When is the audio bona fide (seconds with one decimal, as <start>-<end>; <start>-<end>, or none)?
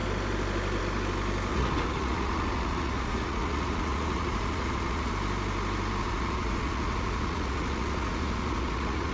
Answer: 0.0-1.5; 5.1-6.0